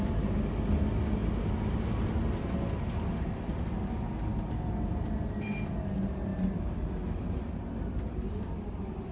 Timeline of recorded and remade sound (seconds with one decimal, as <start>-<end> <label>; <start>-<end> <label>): 0.0-9.1 recorded